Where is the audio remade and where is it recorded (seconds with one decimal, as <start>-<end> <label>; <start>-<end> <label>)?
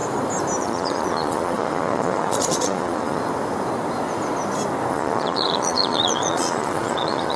0.0-0.6 recorded; 0.6-3.2 remade; 3.2-4.9 recorded; 4.9-7.4 remade